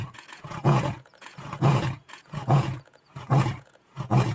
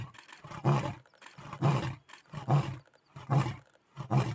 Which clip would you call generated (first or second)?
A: first